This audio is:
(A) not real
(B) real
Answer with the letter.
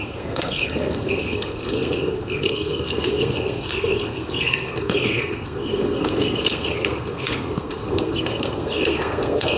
A